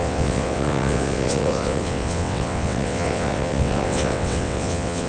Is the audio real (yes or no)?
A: no